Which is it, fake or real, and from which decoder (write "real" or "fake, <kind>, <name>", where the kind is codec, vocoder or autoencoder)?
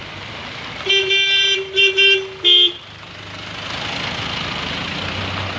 real